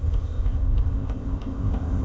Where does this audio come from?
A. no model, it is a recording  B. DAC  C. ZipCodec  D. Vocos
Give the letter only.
C